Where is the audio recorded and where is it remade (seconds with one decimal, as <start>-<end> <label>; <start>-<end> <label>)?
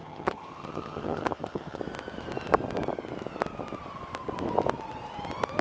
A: 0.0-1.8 remade; 1.8-5.6 recorded